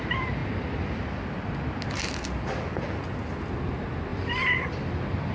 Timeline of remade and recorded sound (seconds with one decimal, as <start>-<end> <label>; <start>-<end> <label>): 0.0-5.3 recorded